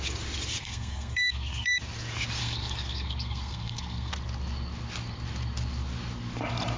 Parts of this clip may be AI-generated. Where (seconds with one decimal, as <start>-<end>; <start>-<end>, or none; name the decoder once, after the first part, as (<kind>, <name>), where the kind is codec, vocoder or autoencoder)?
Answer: 0.6-1.8 (codec, SNAC); 2.4-4.1